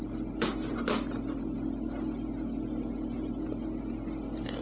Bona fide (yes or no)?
yes